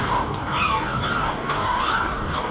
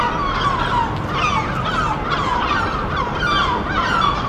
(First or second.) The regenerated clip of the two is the first